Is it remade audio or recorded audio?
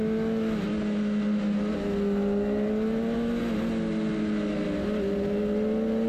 recorded